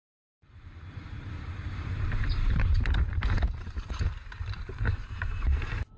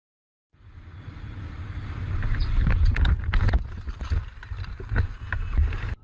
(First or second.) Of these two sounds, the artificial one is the first